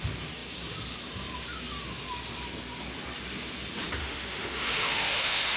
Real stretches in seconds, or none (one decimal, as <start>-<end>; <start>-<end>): 0.0-4.0